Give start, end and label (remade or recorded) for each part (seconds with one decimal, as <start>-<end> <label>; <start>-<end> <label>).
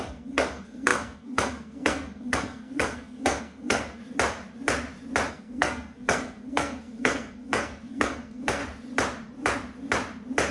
0.0-4.0 remade; 4.0-5.3 recorded; 5.3-8.6 remade; 8.6-10.5 recorded